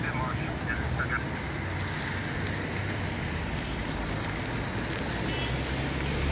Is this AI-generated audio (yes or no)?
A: no